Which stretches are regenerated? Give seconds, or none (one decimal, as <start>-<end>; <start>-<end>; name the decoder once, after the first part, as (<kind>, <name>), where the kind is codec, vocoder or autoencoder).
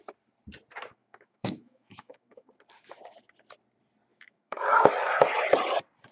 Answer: 1.0-2.5 (autoencoder, DAC-VAE); 4.1-4.9